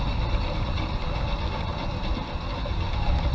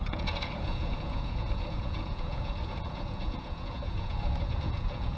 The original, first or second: first